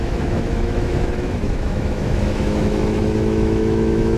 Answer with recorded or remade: remade